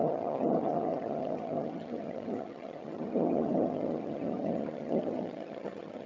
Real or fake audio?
fake